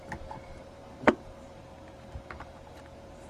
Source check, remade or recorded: remade